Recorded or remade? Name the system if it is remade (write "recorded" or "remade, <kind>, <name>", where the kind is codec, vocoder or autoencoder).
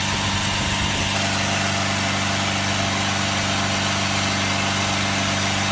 recorded